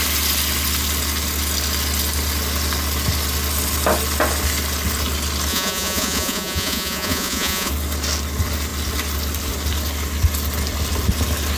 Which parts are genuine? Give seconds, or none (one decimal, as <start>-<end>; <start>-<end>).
0.0-5.5; 7.7-11.6